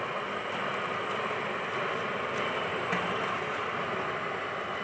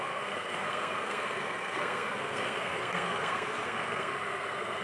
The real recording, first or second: first